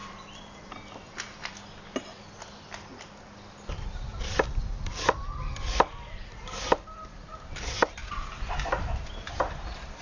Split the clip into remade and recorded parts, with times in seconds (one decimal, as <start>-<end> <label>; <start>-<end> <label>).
0.0-1.5 remade; 1.5-4.1 recorded; 4.1-4.6 remade; 4.6-8.0 recorded; 8.0-8.6 remade; 8.6-10.0 recorded